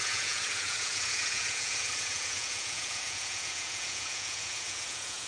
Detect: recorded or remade remade